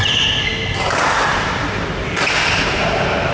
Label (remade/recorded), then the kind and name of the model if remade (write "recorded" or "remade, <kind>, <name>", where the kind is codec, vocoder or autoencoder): recorded